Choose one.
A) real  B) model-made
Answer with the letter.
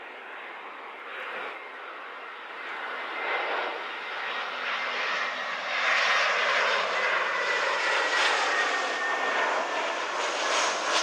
A